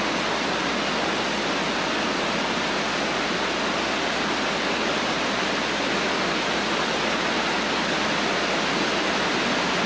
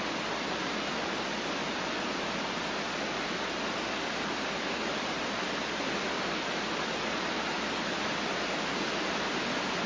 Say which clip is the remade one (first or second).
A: second